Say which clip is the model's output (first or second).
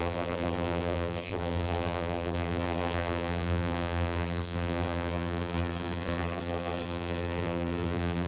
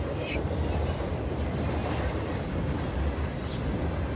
first